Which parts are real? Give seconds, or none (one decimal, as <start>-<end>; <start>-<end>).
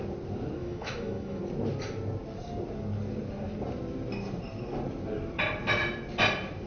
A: 0.0-0.6; 1.4-6.7